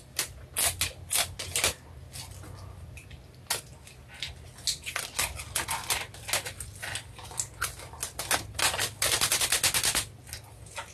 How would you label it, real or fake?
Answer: real